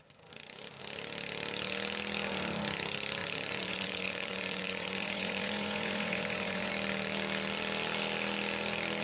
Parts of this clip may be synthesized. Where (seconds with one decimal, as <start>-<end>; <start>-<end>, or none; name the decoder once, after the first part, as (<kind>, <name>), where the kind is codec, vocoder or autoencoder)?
3.2-6.7 (vocoder, Vocos)